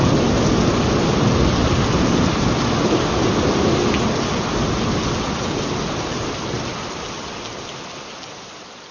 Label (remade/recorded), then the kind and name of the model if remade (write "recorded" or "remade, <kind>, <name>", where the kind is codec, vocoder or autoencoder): recorded